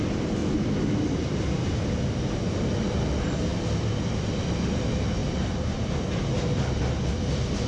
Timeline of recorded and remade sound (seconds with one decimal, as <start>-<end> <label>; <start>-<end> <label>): 0.0-5.2 recorded; 5.2-6.0 remade; 6.0-7.7 recorded